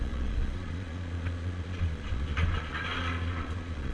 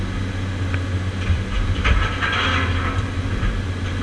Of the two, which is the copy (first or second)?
first